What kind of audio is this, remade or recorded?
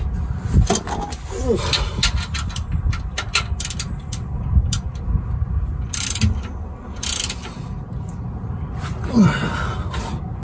recorded